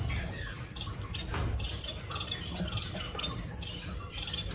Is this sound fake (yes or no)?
yes